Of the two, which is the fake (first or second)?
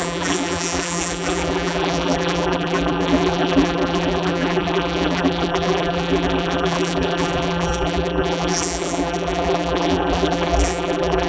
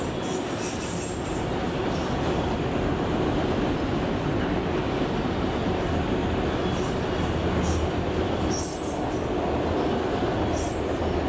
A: first